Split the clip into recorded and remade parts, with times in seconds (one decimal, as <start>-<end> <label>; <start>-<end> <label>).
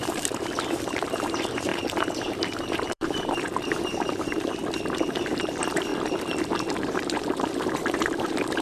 0.0-4.6 remade; 4.6-5.1 recorded; 5.1-5.9 remade; 5.9-6.8 recorded; 6.8-8.6 remade